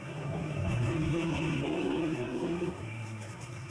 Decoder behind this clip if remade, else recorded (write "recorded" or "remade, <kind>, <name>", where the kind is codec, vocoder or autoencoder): remade, codec, SNAC